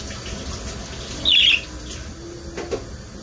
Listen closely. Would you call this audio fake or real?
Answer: real